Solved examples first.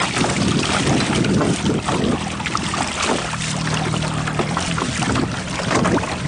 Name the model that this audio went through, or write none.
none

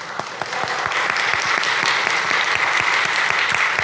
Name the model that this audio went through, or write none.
none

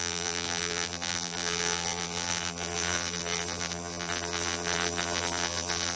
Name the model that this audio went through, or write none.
vocoder, BigVGAN v2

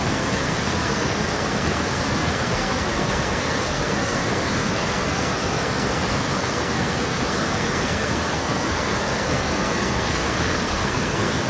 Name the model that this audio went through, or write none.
codec, SNAC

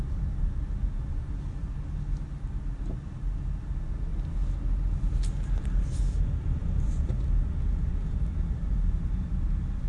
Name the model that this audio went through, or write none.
none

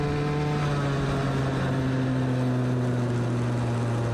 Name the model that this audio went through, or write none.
none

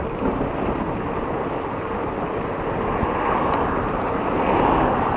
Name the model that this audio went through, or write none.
none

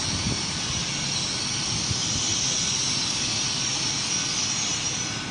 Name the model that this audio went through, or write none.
none